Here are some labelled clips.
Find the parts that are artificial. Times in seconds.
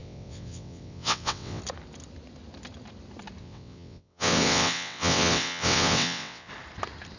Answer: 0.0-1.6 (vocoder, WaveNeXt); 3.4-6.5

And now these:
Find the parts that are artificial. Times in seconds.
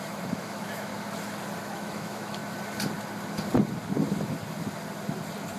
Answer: 0.0-0.9 (autoencoder, DAC-VAE); 1.6-2.4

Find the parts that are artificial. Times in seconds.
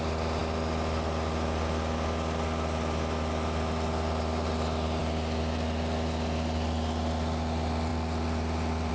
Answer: none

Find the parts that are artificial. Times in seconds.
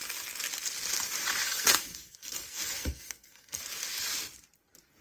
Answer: 1.4-3.6 (codec, SNAC)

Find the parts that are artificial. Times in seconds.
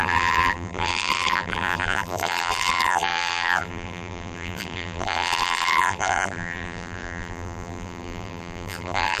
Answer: 0.0-9.2 (vocoder, BigVGAN v2)